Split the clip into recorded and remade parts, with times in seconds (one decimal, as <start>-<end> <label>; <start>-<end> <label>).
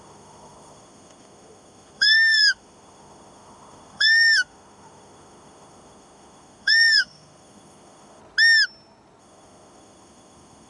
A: 0.0-8.2 remade; 8.2-9.2 recorded; 9.2-10.7 remade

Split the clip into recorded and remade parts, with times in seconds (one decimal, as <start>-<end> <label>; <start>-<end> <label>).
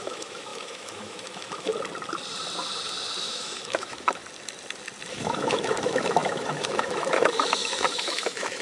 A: 0.0-1.7 remade; 1.7-3.2 recorded; 3.2-4.2 remade; 4.2-5.1 recorded; 5.1-8.6 remade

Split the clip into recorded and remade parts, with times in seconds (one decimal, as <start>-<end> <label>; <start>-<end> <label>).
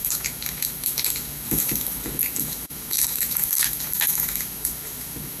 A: 0.0-5.4 remade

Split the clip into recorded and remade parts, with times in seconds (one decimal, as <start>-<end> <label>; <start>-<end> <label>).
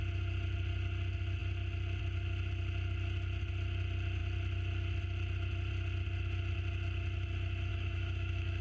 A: 0.0-7.7 recorded; 7.7-8.6 remade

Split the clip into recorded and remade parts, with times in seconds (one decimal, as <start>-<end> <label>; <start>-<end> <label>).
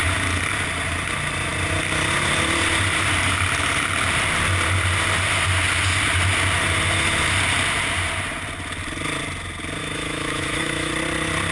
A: 0.0-9.8 recorded; 9.8-10.9 remade; 10.9-11.5 recorded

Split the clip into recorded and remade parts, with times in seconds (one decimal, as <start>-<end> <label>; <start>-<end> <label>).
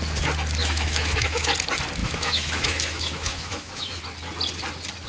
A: 0.0-0.6 recorded; 0.6-1.5 remade; 1.5-2.0 recorded; 2.0-4.0 remade; 4.0-5.1 recorded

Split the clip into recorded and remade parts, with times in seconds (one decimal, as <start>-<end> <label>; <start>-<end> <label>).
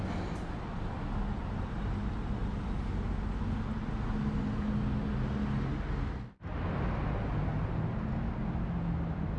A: 0.0-9.4 recorded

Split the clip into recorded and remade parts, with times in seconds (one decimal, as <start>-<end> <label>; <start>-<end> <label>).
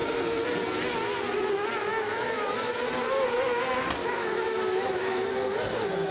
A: 0.0-1.9 recorded; 1.9-2.8 remade; 2.8-4.0 recorded; 4.0-5.3 remade; 5.3-6.1 recorded